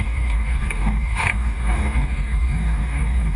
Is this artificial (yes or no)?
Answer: yes